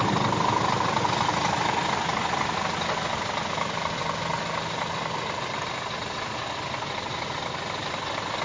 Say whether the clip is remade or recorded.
recorded